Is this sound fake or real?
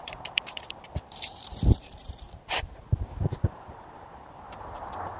fake